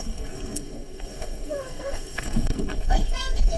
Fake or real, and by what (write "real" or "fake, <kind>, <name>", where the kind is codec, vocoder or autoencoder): fake, codec, SNAC